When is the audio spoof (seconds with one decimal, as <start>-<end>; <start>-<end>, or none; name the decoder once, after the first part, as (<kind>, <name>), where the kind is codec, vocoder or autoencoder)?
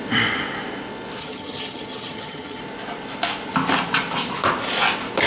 1.2-2.6 (vocoder, HiFi-GAN)